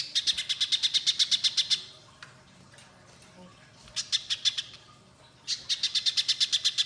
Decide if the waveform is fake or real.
real